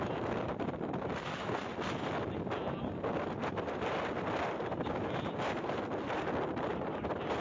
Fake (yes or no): no